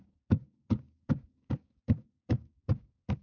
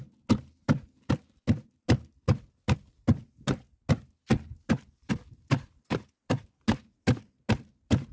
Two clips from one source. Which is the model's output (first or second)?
first